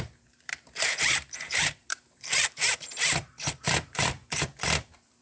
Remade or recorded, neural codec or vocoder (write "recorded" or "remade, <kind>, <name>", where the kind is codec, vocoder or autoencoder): remade, vocoder, BigVGAN v2